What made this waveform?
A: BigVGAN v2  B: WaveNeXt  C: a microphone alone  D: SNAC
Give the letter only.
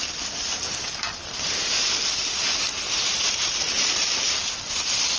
C